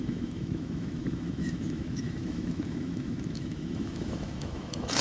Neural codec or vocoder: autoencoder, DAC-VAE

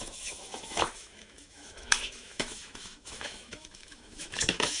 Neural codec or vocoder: autoencoder, DAC-VAE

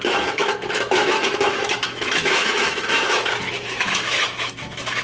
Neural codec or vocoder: autoencoder, DAC-VAE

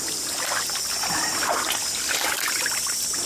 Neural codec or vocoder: none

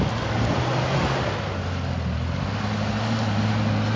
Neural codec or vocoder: none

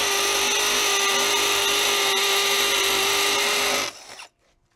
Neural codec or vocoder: none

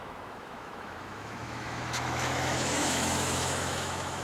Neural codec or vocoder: autoencoder, DAC-VAE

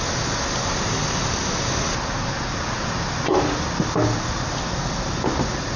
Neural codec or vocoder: none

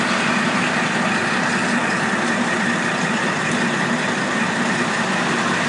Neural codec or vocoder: none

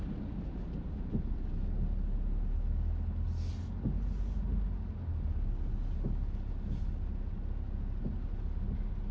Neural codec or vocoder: none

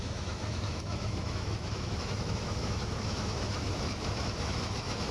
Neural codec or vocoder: autoencoder, DAC-VAE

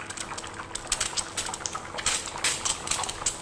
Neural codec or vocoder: none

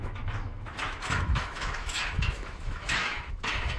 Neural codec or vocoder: autoencoder, DAC-VAE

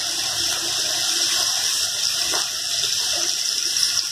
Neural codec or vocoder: none